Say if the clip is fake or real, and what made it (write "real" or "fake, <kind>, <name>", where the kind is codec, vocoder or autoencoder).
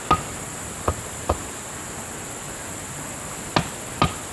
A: real